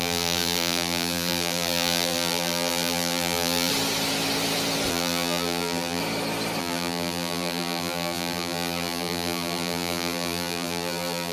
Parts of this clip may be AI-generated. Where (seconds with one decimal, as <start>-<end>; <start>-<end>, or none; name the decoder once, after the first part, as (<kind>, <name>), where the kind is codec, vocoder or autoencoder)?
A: 0.0-3.7 (vocoder, BigVGAN v2); 4.9-6.0; 6.6-11.3